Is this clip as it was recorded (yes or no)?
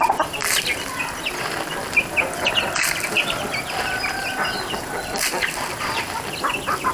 yes